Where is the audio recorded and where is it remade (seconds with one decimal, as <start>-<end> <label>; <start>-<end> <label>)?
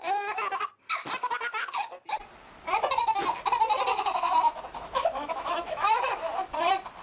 0.0-3.9 recorded; 3.9-6.5 remade; 6.5-7.0 recorded